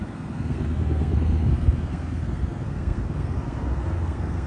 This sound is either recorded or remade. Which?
remade